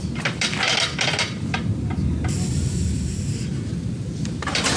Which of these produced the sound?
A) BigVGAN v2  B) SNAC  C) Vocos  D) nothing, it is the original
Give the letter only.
A